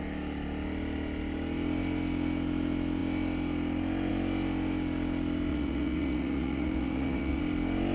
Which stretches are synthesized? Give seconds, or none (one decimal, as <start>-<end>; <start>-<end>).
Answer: 5.5-7.4